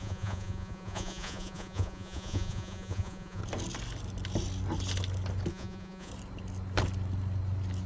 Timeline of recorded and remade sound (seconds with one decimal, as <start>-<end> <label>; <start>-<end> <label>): 0.0-3.4 remade; 3.4-5.5 recorded; 5.5-6.1 remade; 6.1-7.9 recorded